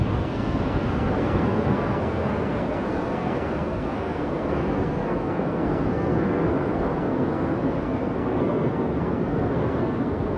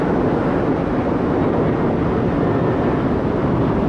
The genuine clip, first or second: second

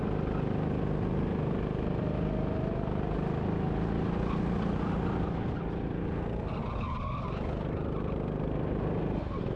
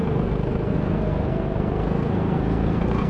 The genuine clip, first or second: first